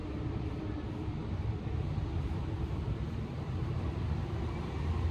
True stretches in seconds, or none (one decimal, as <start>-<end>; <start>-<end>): none